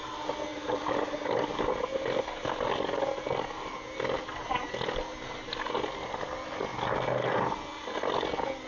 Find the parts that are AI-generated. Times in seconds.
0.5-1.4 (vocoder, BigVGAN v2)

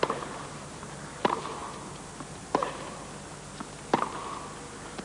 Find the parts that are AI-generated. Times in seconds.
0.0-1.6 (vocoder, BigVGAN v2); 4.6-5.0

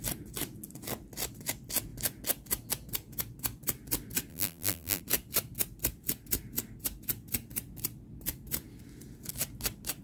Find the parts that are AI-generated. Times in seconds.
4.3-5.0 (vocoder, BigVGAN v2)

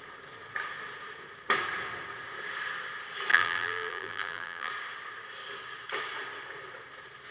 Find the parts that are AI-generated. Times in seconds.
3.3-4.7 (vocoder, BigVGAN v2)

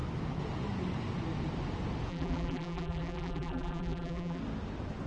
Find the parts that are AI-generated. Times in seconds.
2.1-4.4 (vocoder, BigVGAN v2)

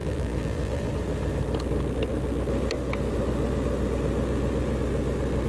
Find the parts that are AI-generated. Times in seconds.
0.0-0.9 (vocoder, BigVGAN v2)